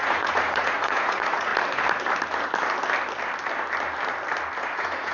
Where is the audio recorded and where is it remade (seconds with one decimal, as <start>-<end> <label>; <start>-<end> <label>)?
0.0-1.5 remade; 1.5-4.6 recorded; 4.6-5.1 remade